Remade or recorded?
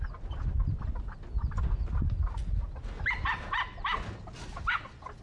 recorded